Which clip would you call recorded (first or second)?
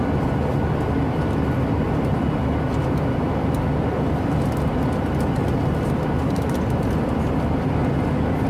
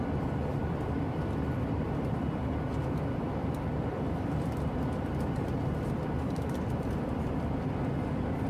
first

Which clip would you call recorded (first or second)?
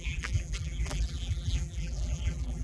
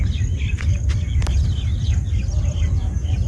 second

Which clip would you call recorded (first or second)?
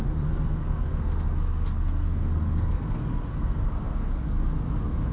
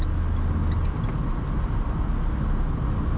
second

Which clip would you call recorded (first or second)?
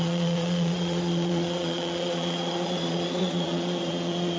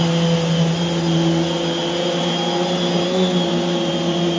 second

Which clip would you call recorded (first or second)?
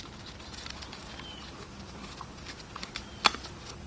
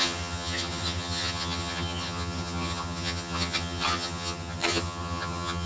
first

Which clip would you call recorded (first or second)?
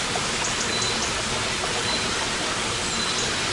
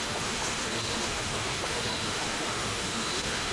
first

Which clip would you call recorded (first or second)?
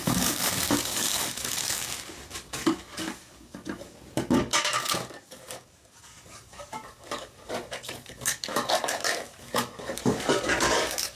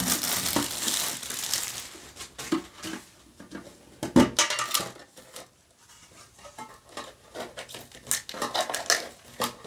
second